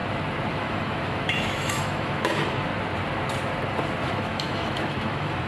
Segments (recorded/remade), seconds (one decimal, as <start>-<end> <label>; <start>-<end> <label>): 0.0-0.5 recorded; 0.5-2.7 remade; 2.7-4.1 recorded; 4.1-5.5 remade